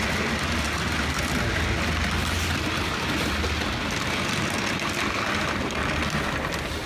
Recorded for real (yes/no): yes